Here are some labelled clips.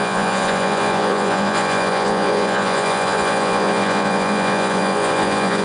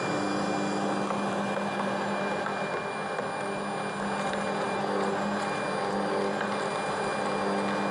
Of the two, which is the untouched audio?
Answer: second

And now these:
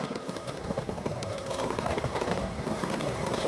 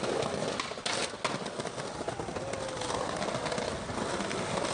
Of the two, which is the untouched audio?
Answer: second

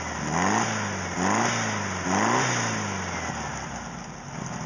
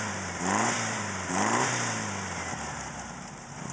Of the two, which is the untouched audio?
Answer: first